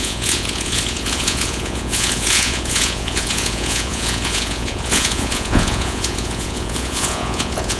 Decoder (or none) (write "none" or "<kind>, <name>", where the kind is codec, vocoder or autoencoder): vocoder, Vocos